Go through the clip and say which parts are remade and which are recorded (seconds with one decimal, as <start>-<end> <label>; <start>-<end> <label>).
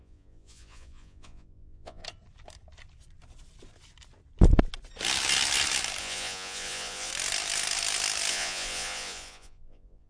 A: 0.0-2.0 remade; 2.0-6.0 recorded; 6.0-7.1 remade; 7.1-8.3 recorded; 8.3-10.1 remade